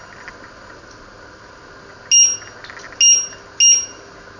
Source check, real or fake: real